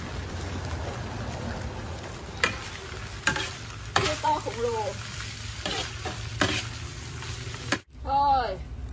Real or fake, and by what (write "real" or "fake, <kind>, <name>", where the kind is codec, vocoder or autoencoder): fake, vocoder, BigVGAN v2